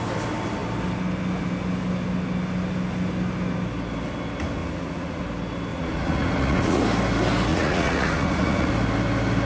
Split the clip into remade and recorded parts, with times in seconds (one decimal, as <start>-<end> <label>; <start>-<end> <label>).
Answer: 0.0-4.6 recorded; 4.6-5.2 remade; 5.2-5.7 recorded; 5.7-6.8 remade; 6.8-7.5 recorded; 7.5-8.7 remade; 8.7-9.4 recorded